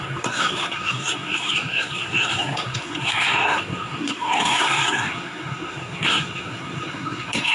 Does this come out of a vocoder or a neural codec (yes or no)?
yes